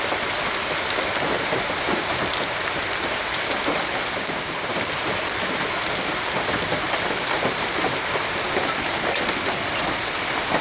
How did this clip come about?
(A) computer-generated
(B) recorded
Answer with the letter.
B